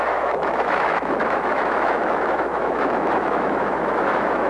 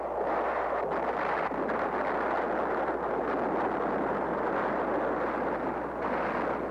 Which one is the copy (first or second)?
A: first